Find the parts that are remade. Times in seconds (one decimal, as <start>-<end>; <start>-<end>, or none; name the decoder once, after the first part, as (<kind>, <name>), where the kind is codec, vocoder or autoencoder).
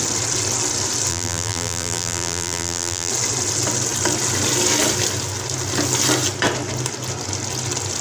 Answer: 1.1-3.1 (vocoder, BigVGAN v2)